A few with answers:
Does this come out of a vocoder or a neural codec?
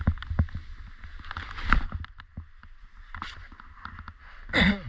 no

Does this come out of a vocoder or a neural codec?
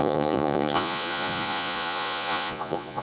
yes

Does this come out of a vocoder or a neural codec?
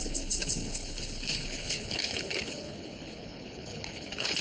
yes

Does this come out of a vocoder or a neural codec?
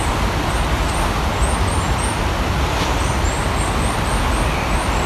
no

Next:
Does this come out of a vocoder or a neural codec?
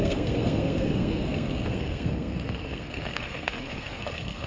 yes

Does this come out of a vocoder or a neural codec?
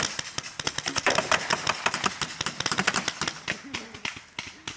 no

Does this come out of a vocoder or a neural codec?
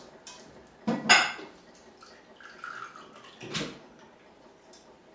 no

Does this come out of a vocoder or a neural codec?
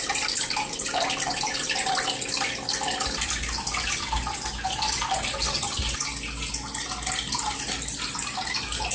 no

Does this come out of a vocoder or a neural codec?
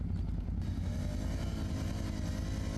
no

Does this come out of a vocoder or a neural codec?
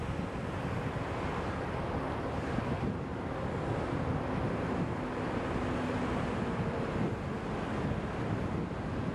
no